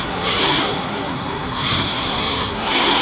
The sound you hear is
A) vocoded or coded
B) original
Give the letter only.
A